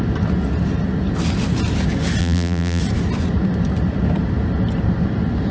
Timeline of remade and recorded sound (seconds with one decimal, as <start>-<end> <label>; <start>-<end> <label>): 0.0-2.2 recorded; 2.2-2.8 remade; 2.8-5.5 recorded